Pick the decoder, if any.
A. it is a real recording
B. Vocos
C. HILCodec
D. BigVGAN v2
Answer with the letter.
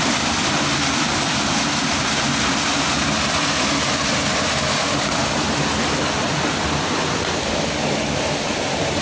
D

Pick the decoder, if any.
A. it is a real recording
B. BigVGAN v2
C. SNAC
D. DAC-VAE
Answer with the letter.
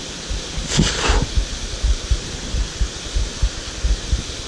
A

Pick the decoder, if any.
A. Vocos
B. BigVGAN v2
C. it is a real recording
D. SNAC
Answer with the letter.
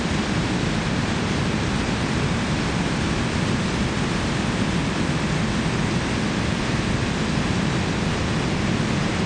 C